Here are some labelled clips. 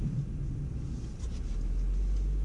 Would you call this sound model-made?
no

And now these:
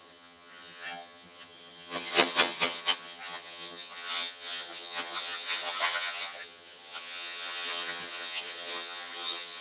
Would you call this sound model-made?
yes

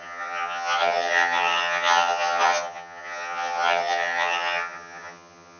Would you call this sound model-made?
yes